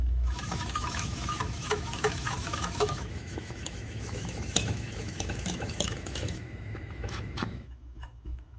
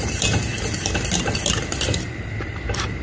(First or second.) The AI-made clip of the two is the first